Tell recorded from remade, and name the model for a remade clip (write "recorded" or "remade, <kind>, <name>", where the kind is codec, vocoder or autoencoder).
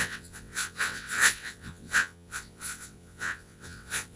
remade, vocoder, WaveNeXt